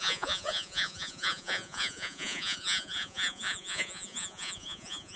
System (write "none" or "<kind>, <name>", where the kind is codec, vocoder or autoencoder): vocoder, Vocos